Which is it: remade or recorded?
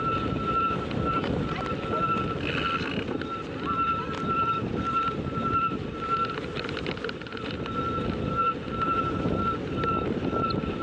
recorded